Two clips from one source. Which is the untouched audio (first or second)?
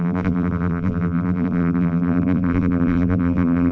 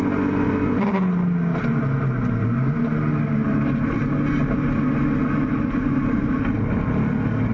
second